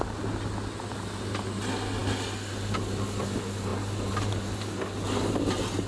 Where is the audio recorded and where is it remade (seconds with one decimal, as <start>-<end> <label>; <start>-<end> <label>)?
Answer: 0.0-5.9 recorded